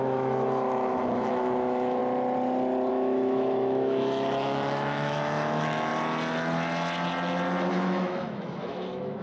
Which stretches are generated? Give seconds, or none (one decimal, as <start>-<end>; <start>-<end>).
0.0-2.0; 2.9-5.9; 7.7-9.2